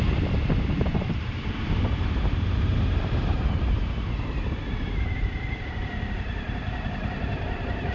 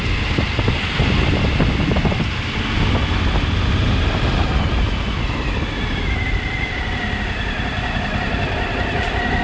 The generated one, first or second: first